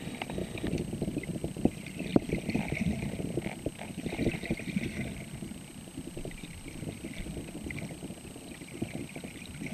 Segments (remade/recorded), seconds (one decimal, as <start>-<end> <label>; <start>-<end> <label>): 0.0-9.7 recorded